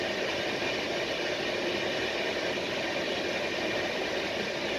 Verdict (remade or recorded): recorded